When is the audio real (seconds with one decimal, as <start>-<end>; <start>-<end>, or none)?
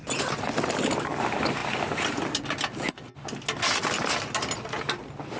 0.0-5.4